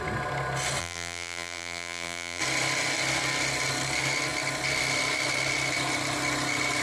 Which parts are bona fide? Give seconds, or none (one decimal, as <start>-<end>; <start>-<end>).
0.0-0.8; 2.4-6.8